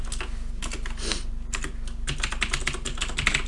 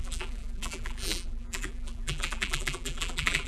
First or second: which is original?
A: first